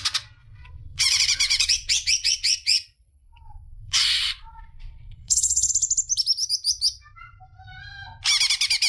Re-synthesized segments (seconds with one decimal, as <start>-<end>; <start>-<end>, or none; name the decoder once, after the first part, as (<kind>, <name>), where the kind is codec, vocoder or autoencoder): 0.4-5.7 (vocoder, Vocos)